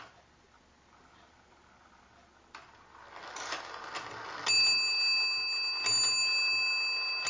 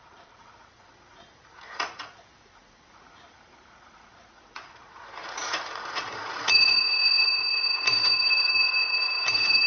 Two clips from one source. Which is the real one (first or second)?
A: first